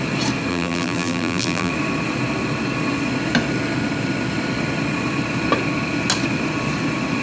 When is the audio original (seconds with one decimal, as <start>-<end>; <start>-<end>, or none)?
0.0-0.5; 1.7-7.2

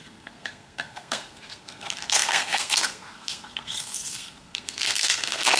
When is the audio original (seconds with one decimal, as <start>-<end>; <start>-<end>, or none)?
none

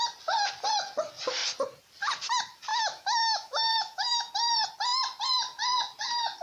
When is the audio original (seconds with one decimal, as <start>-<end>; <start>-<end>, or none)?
0.0-2.7; 4.3-6.4

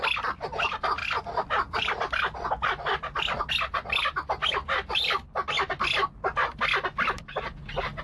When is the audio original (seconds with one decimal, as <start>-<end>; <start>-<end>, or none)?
0.0-8.0

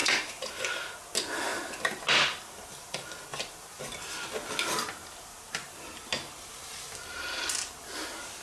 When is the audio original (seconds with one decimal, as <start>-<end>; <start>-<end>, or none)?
0.6-5.0; 5.7-8.4

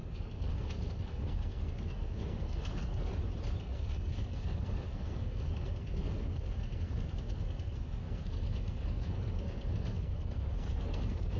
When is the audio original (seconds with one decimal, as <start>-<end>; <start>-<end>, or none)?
3.1-3.6